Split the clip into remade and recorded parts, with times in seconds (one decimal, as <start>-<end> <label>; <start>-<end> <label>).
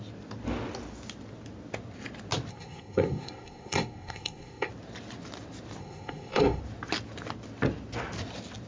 0.0-2.5 recorded; 2.5-4.7 remade; 4.7-5.8 recorded; 5.8-6.6 remade; 6.6-8.7 recorded